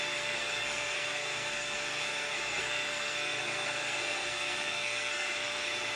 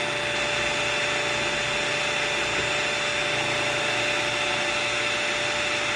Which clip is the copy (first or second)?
first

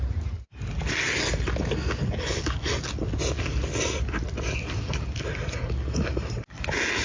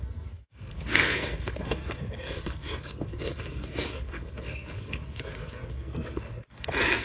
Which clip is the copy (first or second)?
second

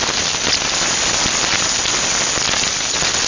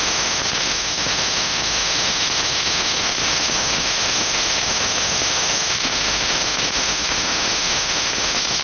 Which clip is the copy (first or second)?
second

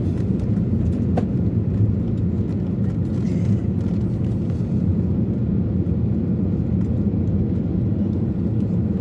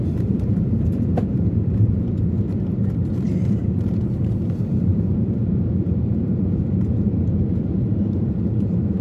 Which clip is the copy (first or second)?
second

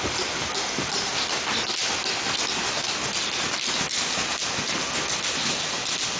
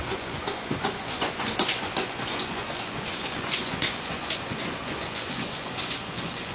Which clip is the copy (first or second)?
second